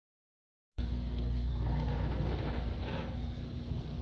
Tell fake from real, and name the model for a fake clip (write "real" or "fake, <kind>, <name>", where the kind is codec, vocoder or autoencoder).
fake, codec, SNAC